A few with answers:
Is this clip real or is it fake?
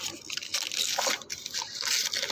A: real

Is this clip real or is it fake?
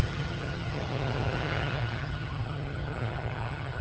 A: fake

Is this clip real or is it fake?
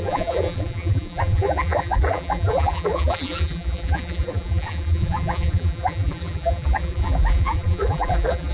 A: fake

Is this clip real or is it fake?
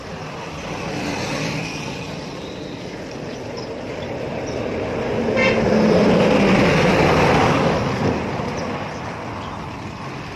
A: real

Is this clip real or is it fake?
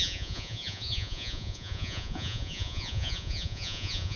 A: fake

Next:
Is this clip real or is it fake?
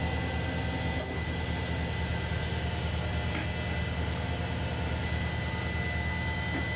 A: real